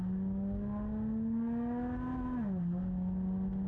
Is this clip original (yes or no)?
yes